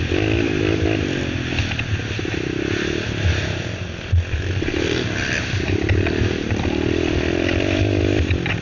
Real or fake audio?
real